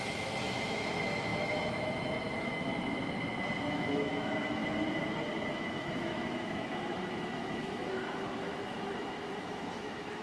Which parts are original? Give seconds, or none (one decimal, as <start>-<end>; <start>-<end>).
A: 2.7-3.7; 4.6-5.5